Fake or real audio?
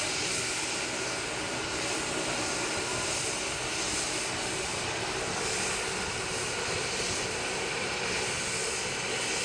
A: real